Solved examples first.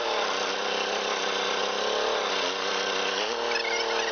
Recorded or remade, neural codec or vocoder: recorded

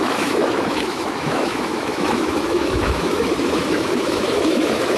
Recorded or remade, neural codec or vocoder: remade, autoencoder, DAC-VAE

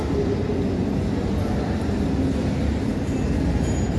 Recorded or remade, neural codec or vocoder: recorded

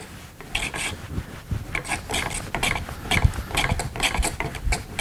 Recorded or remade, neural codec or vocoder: recorded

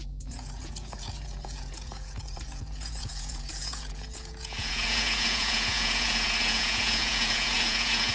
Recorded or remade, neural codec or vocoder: remade, vocoder, Vocos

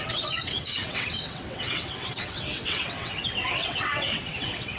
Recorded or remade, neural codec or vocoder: remade, vocoder, WaveNeXt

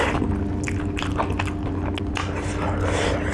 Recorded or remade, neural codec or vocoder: recorded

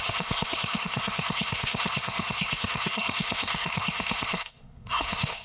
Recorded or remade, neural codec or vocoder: remade, codec, SNAC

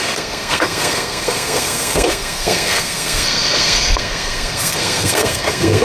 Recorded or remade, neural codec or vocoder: remade, codec, SNAC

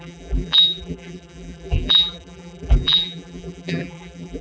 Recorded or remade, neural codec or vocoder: remade, vocoder, BigVGAN v2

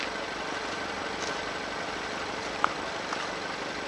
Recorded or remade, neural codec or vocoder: recorded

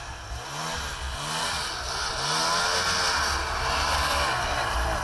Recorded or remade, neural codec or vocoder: recorded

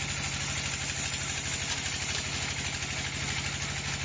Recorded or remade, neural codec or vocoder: recorded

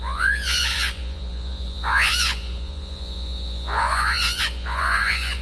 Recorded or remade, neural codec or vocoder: remade, vocoder, Vocos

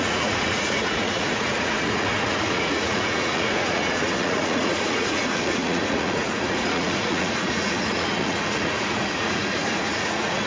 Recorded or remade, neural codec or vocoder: remade, vocoder, Vocos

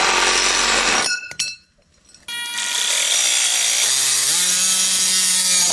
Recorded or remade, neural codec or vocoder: recorded